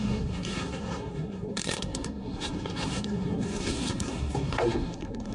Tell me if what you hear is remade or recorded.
remade